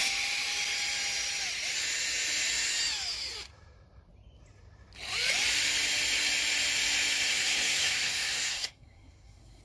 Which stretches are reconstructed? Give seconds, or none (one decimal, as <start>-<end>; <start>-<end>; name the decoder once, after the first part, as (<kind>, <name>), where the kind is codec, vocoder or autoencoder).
7.3-9.6 (codec, SNAC)